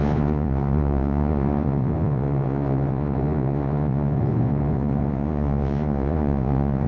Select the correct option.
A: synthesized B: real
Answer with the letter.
A